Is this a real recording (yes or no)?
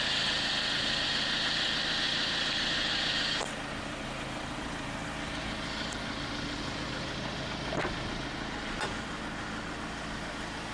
yes